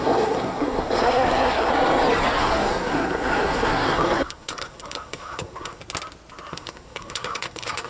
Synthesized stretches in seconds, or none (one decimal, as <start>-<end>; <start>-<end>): 0.0-1.7; 2.4-5.8; 6.5-7.9